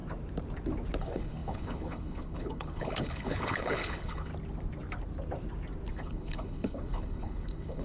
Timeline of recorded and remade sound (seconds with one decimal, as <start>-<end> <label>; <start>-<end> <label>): 0.0-1.0 recorded; 1.0-4.3 remade; 4.3-5.9 recorded; 5.9-7.8 remade